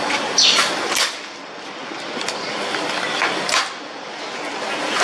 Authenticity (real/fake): real